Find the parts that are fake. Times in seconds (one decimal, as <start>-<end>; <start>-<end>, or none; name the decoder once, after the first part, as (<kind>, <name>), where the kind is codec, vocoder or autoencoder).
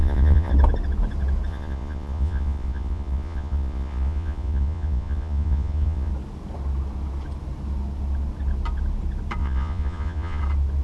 0.0-0.5 (vocoder, Vocos); 1.5-6.1; 9.4-10.4